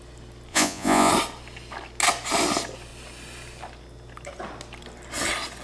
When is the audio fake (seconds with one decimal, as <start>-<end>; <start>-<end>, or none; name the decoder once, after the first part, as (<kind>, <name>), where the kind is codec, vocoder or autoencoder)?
0.5-1.1 (vocoder, Vocos)